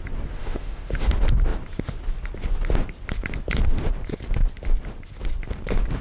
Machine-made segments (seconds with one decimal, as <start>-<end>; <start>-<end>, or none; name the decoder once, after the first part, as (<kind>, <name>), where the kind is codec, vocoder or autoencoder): 0.4-1.1 (autoencoder, DAC-VAE)